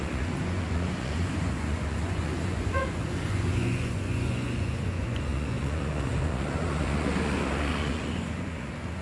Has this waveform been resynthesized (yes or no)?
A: yes